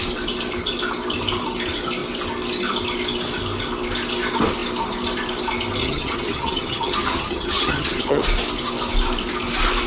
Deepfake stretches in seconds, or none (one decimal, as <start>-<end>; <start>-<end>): 5.8-8.2